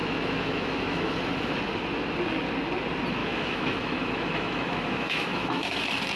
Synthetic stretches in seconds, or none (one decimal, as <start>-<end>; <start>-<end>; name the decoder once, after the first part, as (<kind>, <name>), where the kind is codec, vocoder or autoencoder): 0.0-1.1 (autoencoder, DAC-VAE); 3.2-5.8